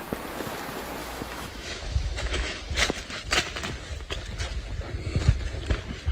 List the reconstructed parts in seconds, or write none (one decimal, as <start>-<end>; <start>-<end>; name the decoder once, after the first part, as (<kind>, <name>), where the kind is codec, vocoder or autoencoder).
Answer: 1.0-2.6 (autoencoder, DAC-VAE)